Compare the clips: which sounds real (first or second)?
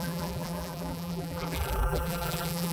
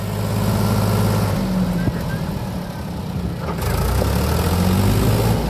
second